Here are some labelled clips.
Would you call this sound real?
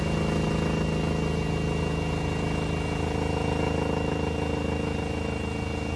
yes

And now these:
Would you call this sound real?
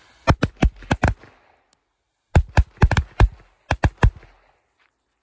yes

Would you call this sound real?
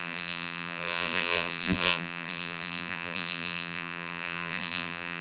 no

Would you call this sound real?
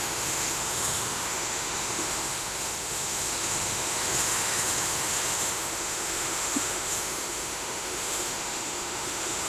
no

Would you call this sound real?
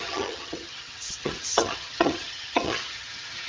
no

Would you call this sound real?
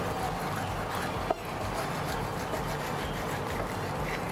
yes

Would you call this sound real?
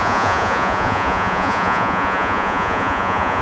no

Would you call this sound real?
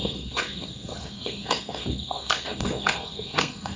no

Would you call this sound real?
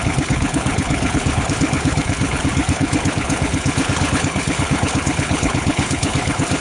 no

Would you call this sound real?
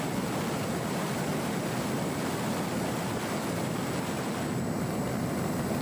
yes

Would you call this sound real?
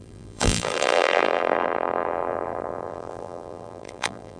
no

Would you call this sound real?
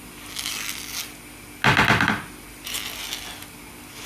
yes